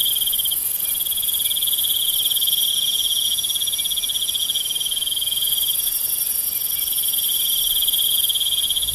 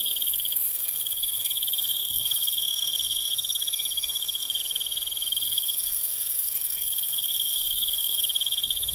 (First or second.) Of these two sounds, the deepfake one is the second